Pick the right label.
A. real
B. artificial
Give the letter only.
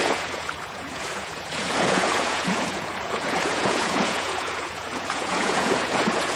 B